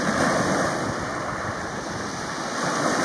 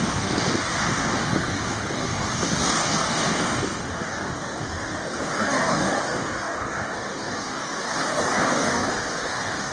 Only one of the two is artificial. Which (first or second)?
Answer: second